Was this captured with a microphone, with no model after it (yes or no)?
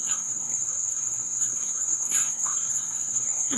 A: no